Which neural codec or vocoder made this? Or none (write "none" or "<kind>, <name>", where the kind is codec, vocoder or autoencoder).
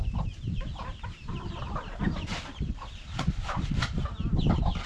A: vocoder, BigVGAN v2